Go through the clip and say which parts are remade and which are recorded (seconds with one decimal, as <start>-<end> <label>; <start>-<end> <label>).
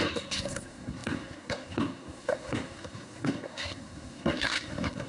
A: 0.0-5.1 remade